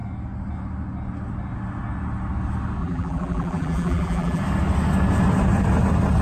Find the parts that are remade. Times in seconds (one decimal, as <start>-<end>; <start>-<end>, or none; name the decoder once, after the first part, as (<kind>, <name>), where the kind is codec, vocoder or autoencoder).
2.8-4.4 (vocoder, BigVGAN v2)